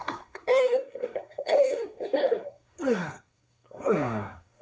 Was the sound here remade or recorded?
remade